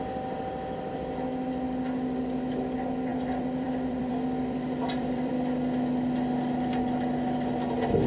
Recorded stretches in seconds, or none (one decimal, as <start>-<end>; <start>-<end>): 0.0-3.1; 5.3-8.1